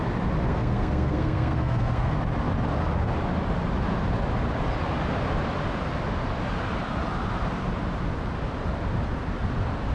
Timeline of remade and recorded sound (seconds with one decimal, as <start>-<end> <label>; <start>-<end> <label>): 0.0-0.5 recorded; 0.5-2.1 remade; 2.1-9.9 recorded